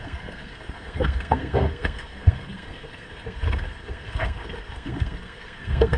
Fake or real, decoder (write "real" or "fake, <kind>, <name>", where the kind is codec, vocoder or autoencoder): fake, codec, SNAC